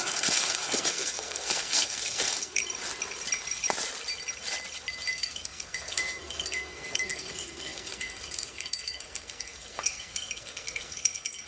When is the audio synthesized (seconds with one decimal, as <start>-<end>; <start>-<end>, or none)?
0.0-2.6; 5.1-11.5